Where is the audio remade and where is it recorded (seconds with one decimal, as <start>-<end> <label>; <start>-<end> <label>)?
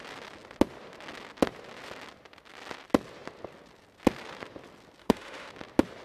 0.0-5.0 recorded; 5.0-5.5 remade; 5.5-6.0 recorded